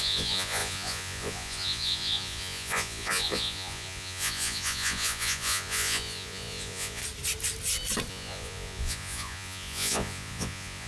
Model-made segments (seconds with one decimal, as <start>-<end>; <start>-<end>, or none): 0.0-7.0; 8.1-10.9